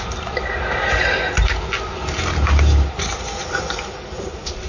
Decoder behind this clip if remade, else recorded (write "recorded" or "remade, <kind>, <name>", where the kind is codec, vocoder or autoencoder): recorded